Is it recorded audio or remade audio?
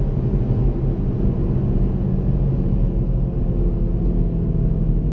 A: recorded